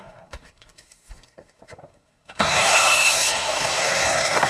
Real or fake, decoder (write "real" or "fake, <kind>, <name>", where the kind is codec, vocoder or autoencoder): fake, codec, SNAC